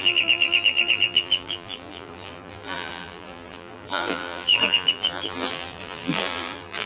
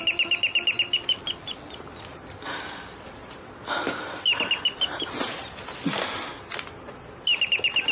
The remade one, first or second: first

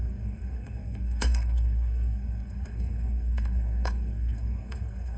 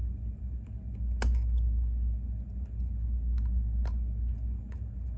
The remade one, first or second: first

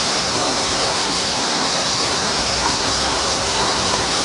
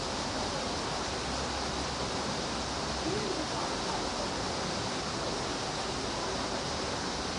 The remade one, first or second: first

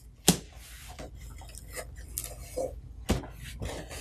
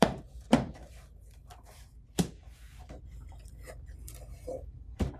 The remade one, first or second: second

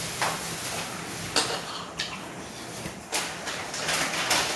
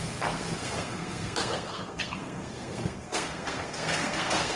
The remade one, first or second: second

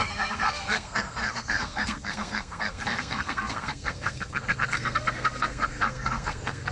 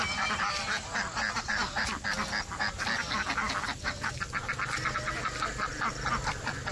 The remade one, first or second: first